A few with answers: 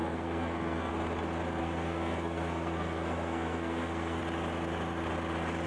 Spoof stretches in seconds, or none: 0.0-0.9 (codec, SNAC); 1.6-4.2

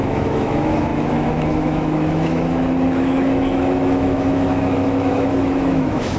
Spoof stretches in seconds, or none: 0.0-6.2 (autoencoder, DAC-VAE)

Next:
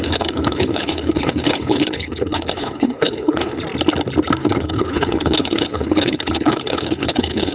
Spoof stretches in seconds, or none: 0.0-3.5 (codec, HILCodec); 4.4-7.5

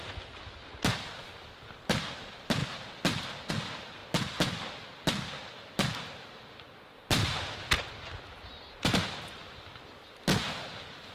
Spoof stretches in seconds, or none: none

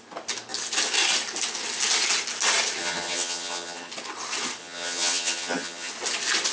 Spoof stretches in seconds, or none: 2.8-3.9 (vocoder, HiFi-GAN); 4.6-5.9

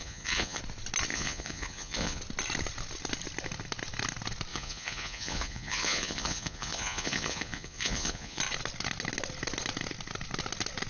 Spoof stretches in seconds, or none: 0.0-0.6 (vocoder, Vocos); 1.1-2.2; 4.5-8.4

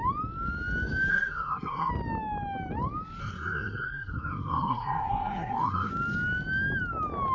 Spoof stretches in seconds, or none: 1.1-1.9 (codec, SNAC); 3.2-5.9

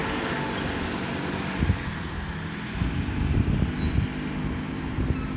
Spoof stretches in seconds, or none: none